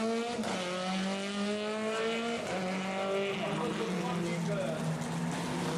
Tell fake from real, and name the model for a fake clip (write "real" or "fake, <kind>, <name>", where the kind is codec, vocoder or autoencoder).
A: real